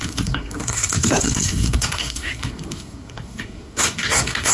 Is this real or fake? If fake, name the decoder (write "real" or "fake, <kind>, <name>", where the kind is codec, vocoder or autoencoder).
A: fake, codec, SNAC